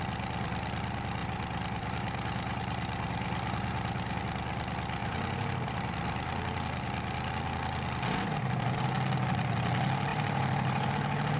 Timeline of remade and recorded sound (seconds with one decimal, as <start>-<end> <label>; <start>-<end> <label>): 0.0-1.2 recorded; 1.2-4.2 remade; 4.2-5.0 recorded; 5.0-5.9 remade; 5.9-10.1 recorded; 10.1-10.9 remade; 10.9-11.4 recorded